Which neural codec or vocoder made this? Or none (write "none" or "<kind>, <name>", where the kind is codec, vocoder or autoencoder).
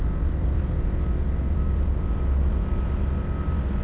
none